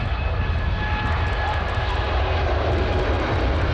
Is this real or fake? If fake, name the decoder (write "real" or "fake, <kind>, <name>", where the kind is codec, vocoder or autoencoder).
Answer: real